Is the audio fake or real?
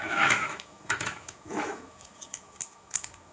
fake